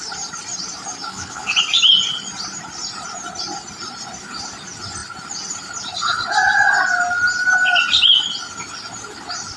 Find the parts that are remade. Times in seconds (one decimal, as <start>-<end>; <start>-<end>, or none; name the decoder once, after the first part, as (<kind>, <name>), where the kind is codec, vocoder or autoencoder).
1.1-1.6 (codec, HILCodec)